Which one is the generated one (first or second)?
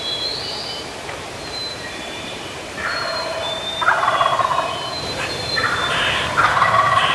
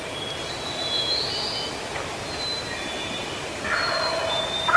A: first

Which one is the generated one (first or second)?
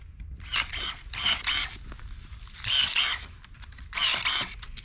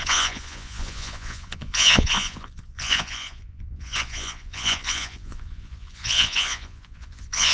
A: second